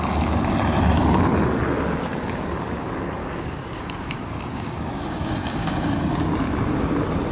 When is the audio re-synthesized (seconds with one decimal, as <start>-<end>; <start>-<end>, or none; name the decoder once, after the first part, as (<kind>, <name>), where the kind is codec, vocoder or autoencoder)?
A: 3.2-6.0 (codec, DAC)